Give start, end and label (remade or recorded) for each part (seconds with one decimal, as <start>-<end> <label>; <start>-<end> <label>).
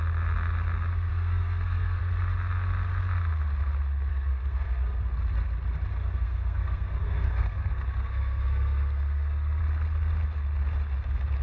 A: 0.0-1.1 recorded; 1.1-2.0 remade; 2.0-4.1 recorded; 4.1-5.1 remade; 5.1-5.9 recorded; 5.9-9.6 remade; 9.6-11.4 recorded